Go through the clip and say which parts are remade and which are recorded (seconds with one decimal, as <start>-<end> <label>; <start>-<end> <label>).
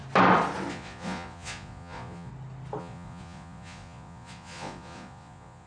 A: 0.0-0.7 recorded; 0.7-2.3 remade; 2.3-2.8 recorded; 2.8-5.7 remade